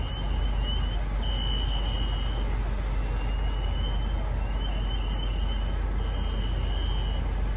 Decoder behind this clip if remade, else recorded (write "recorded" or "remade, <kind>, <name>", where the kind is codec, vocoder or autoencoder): recorded